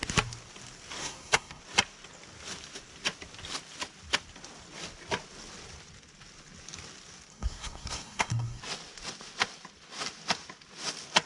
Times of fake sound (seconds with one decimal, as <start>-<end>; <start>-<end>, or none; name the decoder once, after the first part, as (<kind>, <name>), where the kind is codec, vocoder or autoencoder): 1.0-1.6 (codec, SNAC); 7.3-8.6